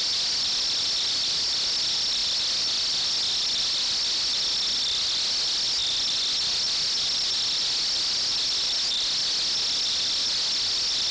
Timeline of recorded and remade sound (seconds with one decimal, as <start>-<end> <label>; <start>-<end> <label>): 0.0-11.1 recorded